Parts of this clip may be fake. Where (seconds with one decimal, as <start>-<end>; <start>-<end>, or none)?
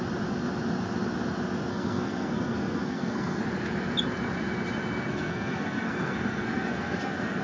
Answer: 1.7-3.4; 5.1-7.4